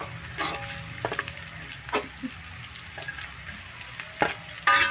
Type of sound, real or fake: real